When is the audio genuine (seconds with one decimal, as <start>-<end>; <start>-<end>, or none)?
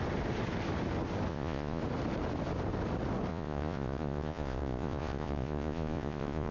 0.0-1.3; 1.8-3.3